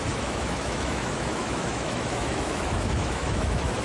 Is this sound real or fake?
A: fake